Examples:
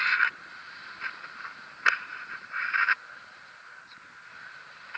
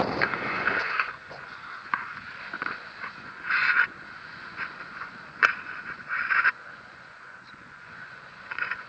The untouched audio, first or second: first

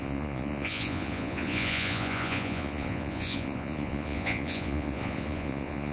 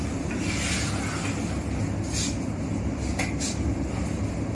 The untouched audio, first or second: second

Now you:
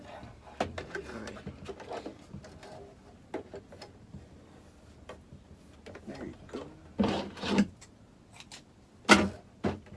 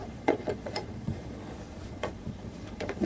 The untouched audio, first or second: first